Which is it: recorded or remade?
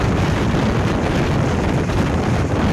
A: recorded